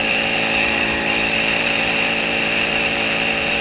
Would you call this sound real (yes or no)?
no